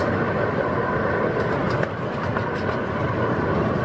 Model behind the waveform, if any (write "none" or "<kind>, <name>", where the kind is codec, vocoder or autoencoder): none